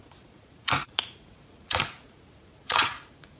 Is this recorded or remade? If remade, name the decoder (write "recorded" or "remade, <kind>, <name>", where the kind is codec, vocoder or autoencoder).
remade, vocoder, Vocos